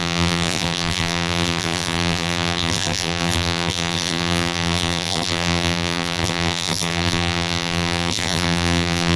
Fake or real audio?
fake